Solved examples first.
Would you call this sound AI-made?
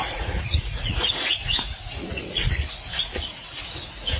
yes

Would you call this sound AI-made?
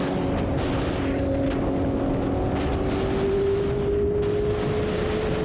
no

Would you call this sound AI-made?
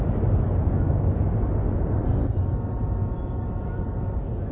no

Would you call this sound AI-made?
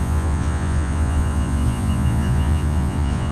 yes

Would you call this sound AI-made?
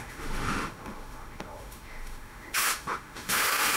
yes